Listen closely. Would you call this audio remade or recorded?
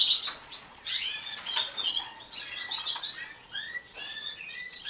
remade